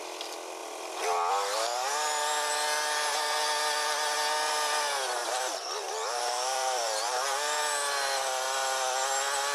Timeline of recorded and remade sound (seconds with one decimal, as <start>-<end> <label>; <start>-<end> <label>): 0.0-5.2 recorded; 5.2-7.6 remade; 7.6-9.5 recorded